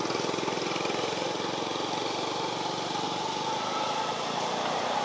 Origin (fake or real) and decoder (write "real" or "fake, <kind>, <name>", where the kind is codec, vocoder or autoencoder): real